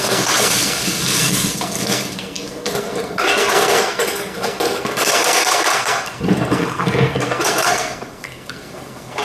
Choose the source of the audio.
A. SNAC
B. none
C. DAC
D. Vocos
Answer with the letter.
A